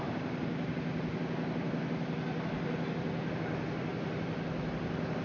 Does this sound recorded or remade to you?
recorded